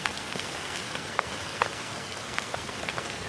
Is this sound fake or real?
fake